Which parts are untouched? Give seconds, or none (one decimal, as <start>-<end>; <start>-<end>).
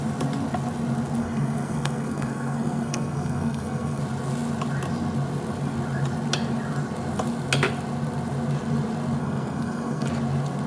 0.0-1.2; 4.0-9.2; 10.1-10.7